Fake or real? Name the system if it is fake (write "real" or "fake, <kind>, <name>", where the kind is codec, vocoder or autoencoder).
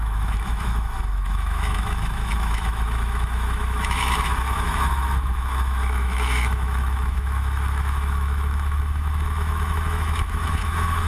fake, autoencoder, DAC-VAE